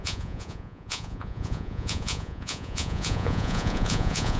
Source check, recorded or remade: remade